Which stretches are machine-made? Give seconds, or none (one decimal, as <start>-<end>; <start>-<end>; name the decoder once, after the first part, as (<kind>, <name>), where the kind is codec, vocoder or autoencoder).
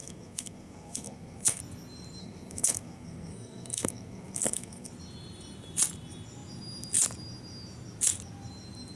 0.0-1.6 (codec, SNAC); 2.2-4.9